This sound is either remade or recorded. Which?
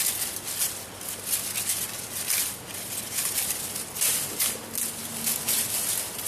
recorded